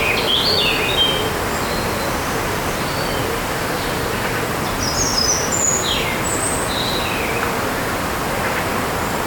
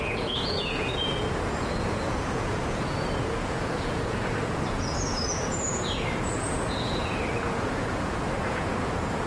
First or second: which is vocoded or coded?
second